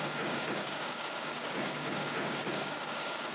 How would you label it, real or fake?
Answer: fake